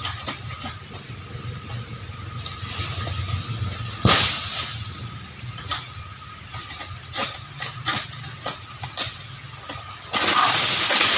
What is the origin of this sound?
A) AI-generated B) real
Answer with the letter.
B